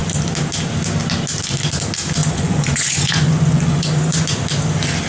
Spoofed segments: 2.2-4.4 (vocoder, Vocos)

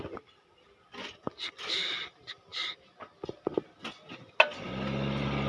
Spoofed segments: none

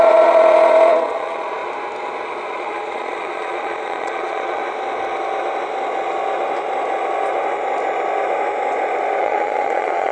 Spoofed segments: 0.0-1.6 (vocoder, Vocos); 2.5-4.6; 9.2-10.1